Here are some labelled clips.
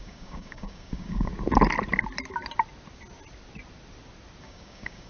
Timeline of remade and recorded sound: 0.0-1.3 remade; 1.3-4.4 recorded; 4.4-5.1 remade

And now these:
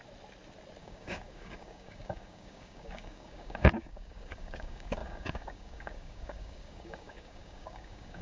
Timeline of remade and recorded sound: 0.0-0.8 recorded; 0.8-8.2 remade

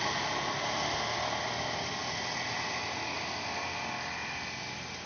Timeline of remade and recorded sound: 0.0-5.1 recorded

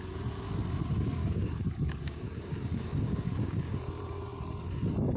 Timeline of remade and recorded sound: 0.0-1.2 recorded; 1.2-3.8 remade; 3.8-5.2 recorded

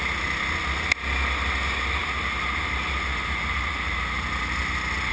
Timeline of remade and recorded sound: 0.0-5.1 recorded

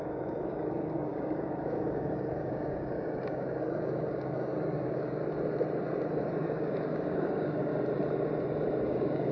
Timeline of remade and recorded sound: 0.0-5.2 remade; 5.2-6.2 recorded; 6.2-7.7 remade; 7.7-8.8 recorded; 8.8-9.3 remade